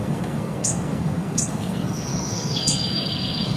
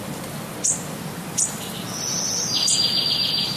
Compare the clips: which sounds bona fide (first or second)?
second